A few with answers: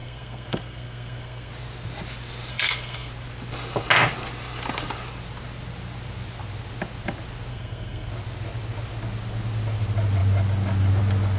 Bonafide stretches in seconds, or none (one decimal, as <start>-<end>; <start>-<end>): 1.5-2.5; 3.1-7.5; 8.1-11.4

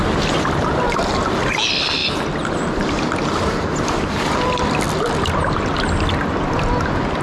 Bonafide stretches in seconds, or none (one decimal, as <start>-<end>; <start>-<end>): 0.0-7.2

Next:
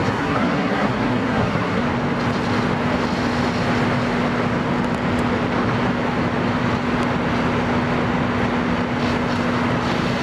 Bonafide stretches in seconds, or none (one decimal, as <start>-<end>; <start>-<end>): 1.8-10.2

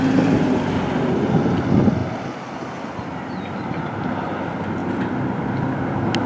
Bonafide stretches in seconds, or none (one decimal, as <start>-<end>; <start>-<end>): 0.0-6.3